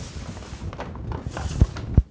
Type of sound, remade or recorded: recorded